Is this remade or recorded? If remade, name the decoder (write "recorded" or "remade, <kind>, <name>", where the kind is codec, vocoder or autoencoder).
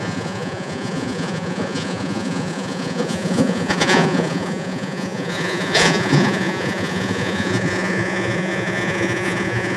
remade, vocoder, Vocos